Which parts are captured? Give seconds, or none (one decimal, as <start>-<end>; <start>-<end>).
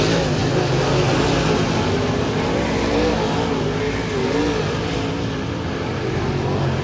0.0-6.8